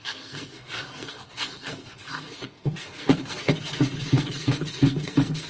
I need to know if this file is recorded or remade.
remade